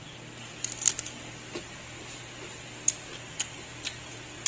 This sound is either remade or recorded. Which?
recorded